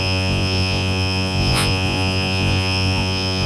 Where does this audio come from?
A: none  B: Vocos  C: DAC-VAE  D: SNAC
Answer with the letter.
B